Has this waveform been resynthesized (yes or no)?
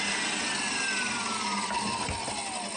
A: no